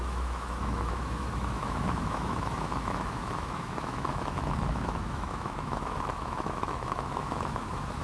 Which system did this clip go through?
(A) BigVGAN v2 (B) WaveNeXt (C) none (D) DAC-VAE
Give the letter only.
D